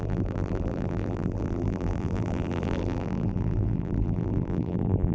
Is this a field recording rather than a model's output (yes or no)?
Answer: no